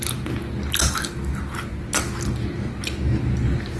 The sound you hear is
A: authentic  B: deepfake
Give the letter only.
A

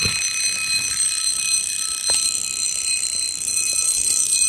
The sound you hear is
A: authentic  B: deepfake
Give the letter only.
A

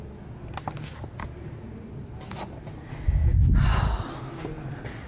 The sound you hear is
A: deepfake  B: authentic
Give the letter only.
B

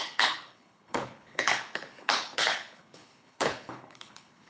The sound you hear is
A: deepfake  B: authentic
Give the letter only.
A